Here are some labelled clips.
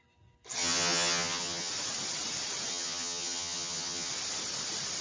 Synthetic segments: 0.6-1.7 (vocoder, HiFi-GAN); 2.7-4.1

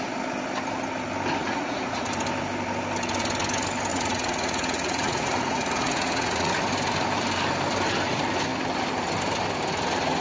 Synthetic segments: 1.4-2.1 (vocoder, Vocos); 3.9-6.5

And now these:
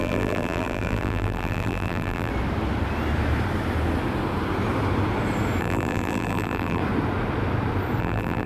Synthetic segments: 0.0-2.3 (vocoder, BigVGAN v2); 5.6-6.8; 8.0-8.5

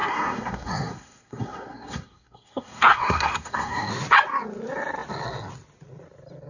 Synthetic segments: 0.0-3.9 (codec, SNAC)